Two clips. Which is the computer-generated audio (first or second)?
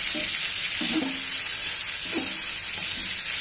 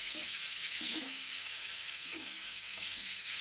second